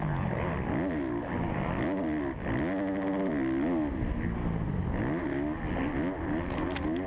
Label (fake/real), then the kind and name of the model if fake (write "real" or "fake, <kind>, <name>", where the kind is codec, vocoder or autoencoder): real